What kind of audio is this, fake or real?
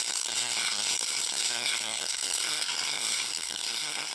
fake